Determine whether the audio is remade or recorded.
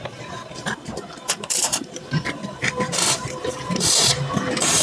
remade